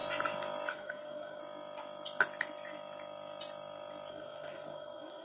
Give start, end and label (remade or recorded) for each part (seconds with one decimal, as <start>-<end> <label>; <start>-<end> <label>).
0.0-0.7 recorded; 0.7-1.4 remade; 1.4-4.1 recorded; 4.1-5.2 remade